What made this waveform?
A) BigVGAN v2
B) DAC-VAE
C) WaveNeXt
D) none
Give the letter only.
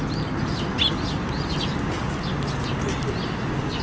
D